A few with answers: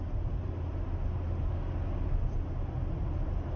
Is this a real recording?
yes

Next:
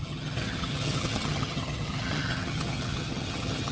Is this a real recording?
no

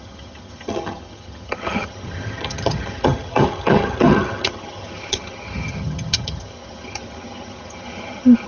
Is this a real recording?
no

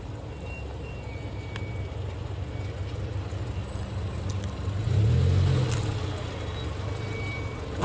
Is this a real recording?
yes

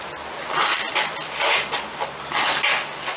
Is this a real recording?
yes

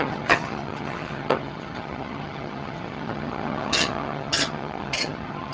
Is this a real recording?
no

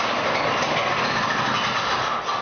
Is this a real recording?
yes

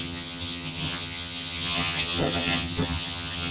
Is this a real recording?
no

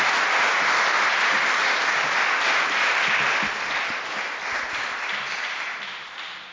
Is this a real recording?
yes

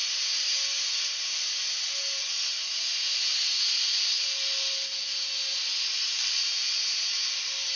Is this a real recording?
yes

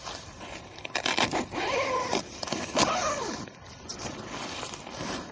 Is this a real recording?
yes